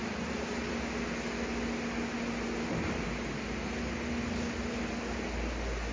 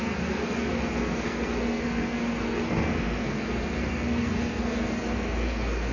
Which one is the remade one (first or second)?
second